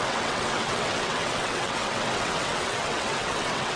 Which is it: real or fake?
fake